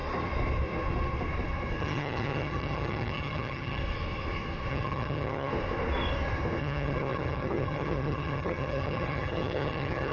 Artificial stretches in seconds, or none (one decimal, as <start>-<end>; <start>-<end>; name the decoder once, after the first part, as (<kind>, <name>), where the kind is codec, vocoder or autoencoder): 1.8-3.8 (vocoder, HiFi-GAN); 4.7-5.5; 6.6-10.1